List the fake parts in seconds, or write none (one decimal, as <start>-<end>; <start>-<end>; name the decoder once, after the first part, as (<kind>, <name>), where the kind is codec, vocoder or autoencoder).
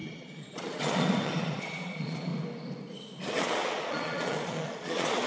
0.0-2.3 (vocoder, Vocos); 3.2-5.3